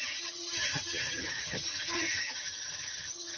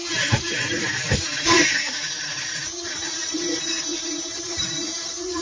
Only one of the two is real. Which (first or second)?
second